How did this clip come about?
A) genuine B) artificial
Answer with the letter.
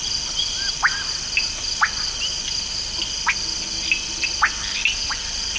A